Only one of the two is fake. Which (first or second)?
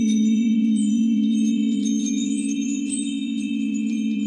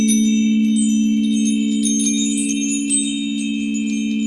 first